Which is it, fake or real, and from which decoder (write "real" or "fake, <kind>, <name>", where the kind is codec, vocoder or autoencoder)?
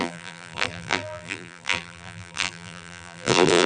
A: fake, vocoder, BigVGAN v2